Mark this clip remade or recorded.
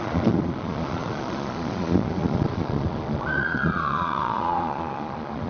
remade